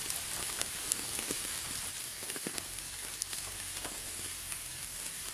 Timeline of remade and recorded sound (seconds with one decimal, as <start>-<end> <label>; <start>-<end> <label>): 0.0-0.4 recorded; 0.4-1.6 remade; 1.6-2.0 recorded; 2.0-5.3 remade